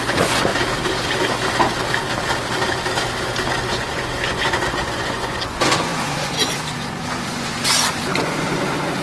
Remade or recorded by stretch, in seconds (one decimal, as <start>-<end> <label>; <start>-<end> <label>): 0.0-0.5 remade; 0.5-3.5 recorded; 3.5-9.0 remade